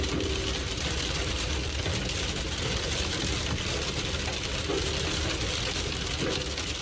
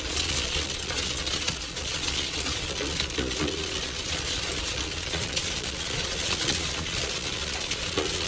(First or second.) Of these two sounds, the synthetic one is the second